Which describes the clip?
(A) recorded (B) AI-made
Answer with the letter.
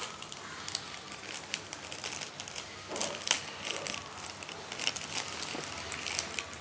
A